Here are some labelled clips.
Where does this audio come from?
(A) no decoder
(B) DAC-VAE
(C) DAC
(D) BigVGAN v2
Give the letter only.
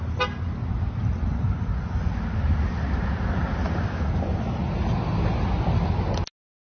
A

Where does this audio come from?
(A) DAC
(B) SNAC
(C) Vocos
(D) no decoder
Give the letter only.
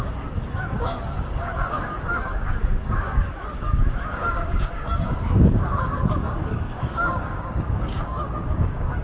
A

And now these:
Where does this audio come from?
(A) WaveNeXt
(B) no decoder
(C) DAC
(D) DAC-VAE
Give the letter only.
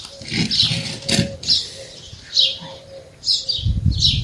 B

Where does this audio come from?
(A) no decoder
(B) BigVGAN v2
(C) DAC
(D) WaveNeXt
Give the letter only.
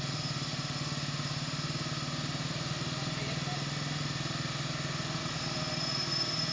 A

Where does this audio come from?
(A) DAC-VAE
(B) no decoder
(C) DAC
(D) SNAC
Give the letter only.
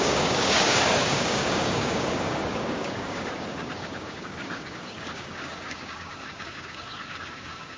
C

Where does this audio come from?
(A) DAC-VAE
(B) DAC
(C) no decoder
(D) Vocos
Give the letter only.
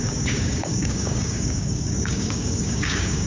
B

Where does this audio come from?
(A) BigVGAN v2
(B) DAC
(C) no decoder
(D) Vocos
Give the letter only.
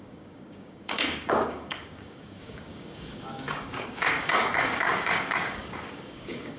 B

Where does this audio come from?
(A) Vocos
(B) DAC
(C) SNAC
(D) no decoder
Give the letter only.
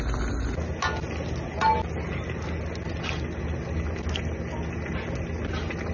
D